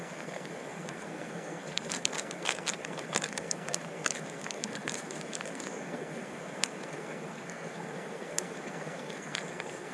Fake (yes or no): yes